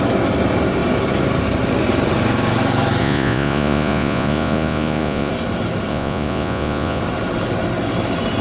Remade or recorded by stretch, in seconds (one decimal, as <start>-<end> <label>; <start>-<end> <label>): 0.0-3.0 recorded; 3.0-5.3 remade; 5.3-5.9 recorded; 5.9-7.0 remade; 7.0-8.4 recorded